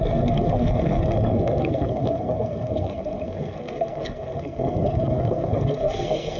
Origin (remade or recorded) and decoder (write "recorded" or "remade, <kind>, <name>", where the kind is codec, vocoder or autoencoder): remade, codec, SNAC